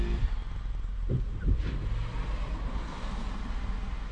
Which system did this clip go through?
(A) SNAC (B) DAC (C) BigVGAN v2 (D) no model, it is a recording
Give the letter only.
D